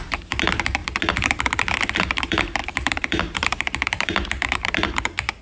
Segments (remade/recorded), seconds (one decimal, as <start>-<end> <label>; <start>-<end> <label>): 0.0-0.8 remade; 0.8-2.0 recorded; 2.0-5.4 remade